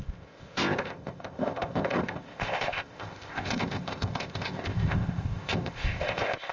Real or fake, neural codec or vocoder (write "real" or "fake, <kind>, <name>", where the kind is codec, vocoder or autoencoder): fake, codec, ZipCodec